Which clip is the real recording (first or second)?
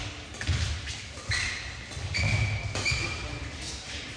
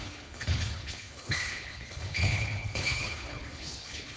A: first